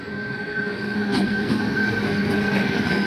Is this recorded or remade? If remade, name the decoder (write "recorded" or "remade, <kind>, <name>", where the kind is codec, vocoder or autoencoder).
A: remade, codec, SNAC